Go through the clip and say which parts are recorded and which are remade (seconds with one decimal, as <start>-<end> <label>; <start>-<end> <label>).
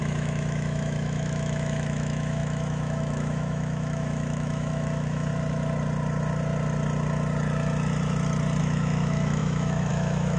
0.0-5.3 remade; 5.3-8.6 recorded; 8.6-10.4 remade